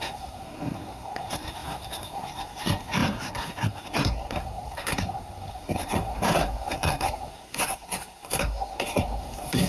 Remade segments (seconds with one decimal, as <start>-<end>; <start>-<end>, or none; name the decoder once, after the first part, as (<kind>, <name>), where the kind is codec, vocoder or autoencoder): 0.0-9.7 (codec, SNAC)